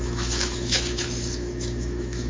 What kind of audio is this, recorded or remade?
remade